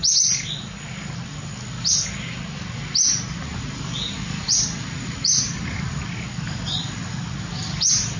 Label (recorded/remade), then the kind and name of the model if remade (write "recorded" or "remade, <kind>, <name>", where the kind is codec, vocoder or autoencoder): recorded